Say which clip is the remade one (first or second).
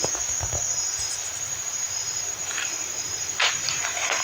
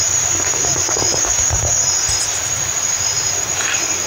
first